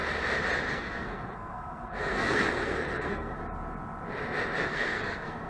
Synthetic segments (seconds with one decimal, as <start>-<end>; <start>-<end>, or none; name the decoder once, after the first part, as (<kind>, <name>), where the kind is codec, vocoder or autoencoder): 0.7-3.4 (codec, SNAC); 4.6-5.5